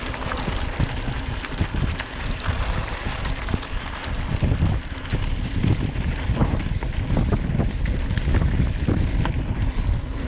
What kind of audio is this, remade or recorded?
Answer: recorded